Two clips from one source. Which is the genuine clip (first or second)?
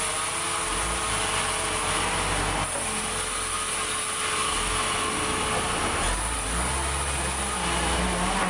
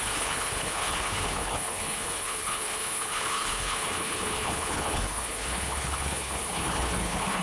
first